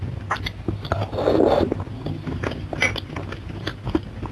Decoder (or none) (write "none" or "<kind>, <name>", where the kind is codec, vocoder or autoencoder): none